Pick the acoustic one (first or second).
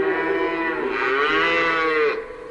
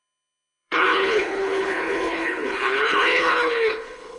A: first